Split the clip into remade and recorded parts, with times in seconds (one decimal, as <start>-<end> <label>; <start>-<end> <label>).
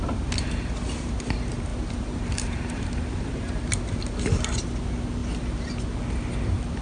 0.0-1.7 recorded; 1.7-3.6 remade; 3.6-6.8 recorded